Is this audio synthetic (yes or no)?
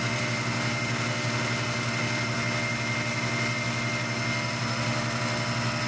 no